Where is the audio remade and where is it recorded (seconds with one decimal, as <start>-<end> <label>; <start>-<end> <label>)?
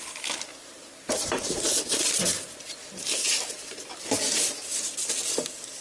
0.0-0.5 recorded; 0.5-4.0 remade; 4.0-5.8 recorded